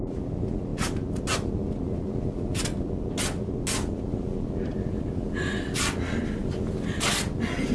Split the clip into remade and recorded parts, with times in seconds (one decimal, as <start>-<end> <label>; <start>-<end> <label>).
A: 0.0-7.7 recorded